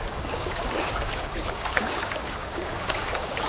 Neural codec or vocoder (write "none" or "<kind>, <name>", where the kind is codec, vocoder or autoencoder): codec, DAC